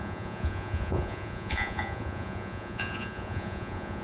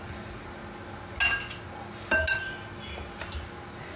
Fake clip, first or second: first